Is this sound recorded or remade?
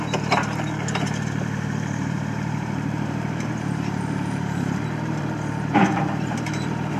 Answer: remade